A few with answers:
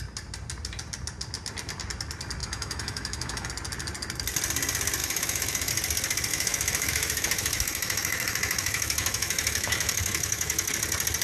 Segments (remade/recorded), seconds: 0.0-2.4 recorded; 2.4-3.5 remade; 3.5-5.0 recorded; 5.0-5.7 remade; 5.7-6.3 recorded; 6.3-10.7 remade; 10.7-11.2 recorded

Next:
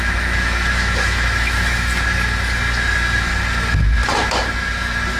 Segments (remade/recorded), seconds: 0.0-1.9 remade; 1.9-5.2 recorded

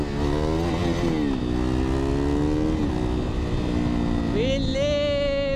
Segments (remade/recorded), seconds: 0.0-5.6 recorded

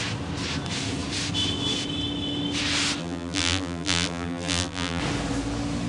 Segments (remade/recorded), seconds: 0.0-3.0 recorded; 3.0-5.0 remade; 5.0-5.9 recorded

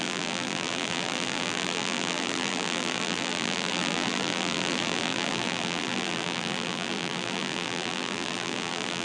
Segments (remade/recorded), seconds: 0.0-9.0 remade

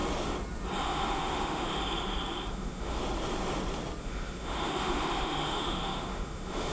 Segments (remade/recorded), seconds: 0.0-0.8 recorded; 0.8-1.8 remade; 1.8-2.5 recorded; 2.5-3.0 remade; 3.0-4.0 recorded; 4.0-6.7 remade

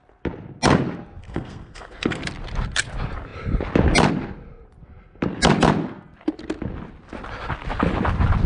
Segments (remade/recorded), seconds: 0.0-1.2 recorded; 1.2-2.2 remade; 2.2-8.5 recorded